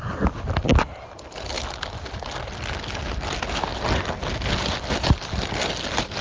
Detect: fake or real real